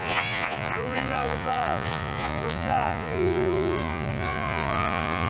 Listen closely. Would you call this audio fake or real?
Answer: fake